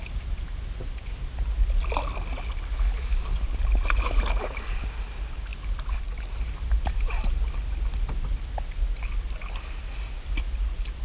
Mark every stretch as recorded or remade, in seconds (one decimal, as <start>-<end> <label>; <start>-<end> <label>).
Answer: 0.0-11.0 recorded